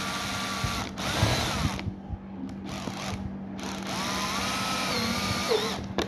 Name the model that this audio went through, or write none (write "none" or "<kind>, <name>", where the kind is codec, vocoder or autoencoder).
none